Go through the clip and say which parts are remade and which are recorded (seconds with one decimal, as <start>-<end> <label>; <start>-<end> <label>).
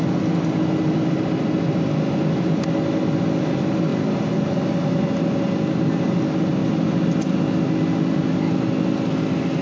0.0-9.6 recorded